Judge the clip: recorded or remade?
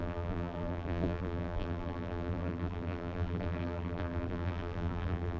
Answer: remade